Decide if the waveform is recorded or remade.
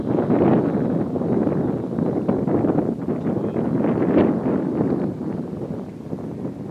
recorded